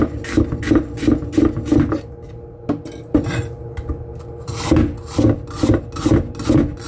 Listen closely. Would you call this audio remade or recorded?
recorded